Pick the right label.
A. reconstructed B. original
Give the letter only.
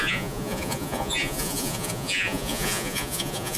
A